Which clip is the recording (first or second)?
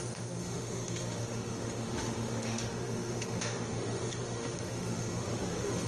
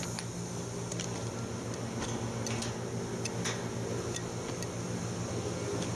second